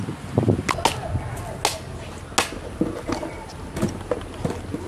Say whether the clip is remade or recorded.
recorded